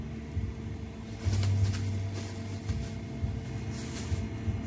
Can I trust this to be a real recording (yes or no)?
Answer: yes